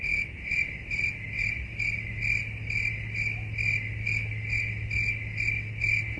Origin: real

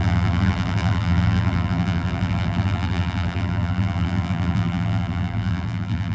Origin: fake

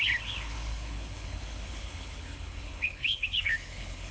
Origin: fake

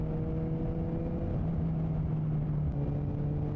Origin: real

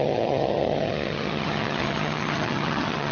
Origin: fake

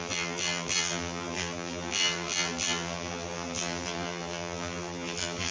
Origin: fake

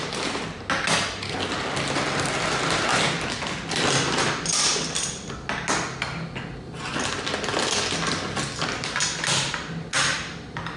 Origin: real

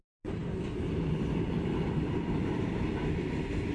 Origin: fake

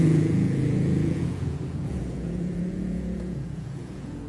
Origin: fake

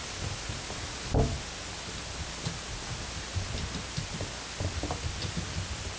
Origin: real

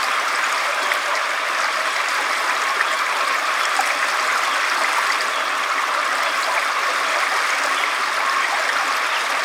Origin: real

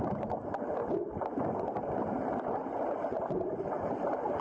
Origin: fake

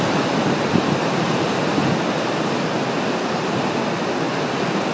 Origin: real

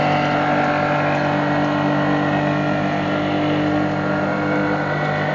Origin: real